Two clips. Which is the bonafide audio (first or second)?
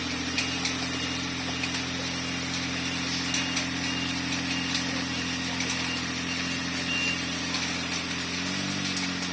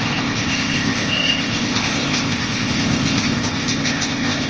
first